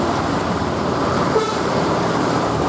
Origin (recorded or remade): remade